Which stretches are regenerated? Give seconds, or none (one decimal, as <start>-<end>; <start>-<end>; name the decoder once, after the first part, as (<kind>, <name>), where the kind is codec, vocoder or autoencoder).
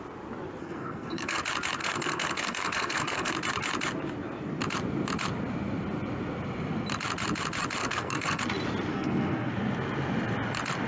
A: 0.6-1.4 (codec, SNAC); 1.8-3.3; 7.8-8.4; 8.9-9.5